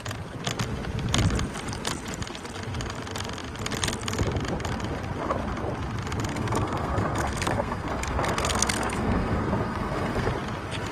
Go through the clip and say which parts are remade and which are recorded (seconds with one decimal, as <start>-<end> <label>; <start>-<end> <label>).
0.0-6.3 recorded; 6.3-10.3 remade; 10.3-10.9 recorded